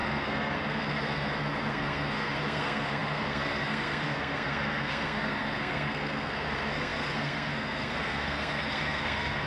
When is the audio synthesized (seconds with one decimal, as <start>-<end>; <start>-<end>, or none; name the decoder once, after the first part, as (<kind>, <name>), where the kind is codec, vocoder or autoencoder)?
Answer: 0.0-9.5 (codec, SNAC)